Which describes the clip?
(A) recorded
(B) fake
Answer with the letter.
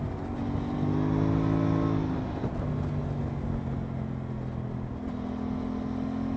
A